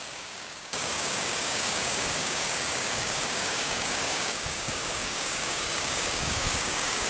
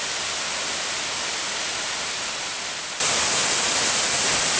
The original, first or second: second